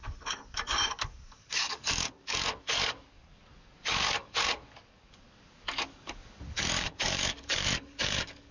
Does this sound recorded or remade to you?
remade